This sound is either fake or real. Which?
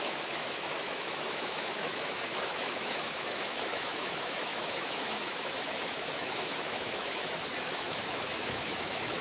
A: fake